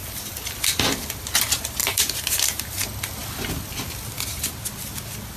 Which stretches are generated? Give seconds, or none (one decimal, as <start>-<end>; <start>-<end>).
1.8-2.8